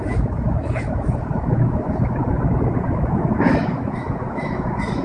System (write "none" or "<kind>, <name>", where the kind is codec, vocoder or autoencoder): autoencoder, DAC-VAE